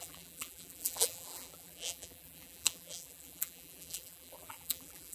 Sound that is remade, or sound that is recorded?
remade